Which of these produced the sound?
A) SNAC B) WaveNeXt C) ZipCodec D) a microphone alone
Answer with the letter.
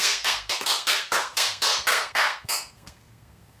A